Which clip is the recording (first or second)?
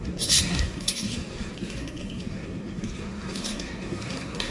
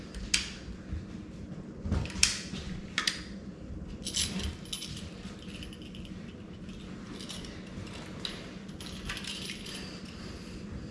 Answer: second